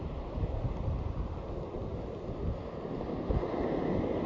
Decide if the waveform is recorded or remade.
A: recorded